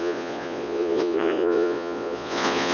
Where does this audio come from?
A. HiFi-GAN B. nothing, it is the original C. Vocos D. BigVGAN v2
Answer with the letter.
C